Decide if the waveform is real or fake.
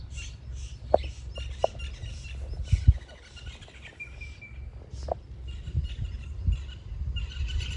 real